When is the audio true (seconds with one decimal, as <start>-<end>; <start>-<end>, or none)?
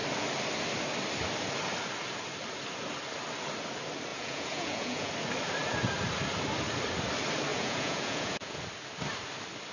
0.0-4.1; 5.1-7.5; 8.6-9.7